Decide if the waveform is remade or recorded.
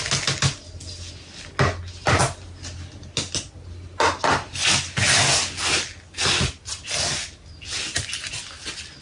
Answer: recorded